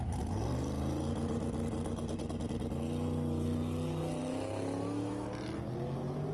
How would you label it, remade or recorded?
recorded